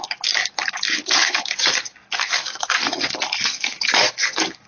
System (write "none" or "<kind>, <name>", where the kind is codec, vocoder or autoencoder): codec, DAC